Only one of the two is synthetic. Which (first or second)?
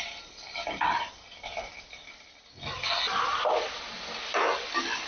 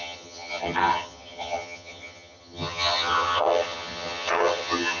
second